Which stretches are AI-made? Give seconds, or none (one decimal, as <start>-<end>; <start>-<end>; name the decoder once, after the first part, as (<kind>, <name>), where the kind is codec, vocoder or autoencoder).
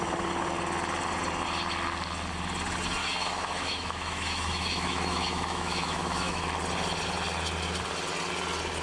3.0-6.4 (autoencoder, DAC-VAE)